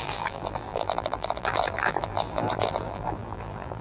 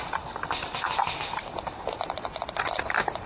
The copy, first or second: first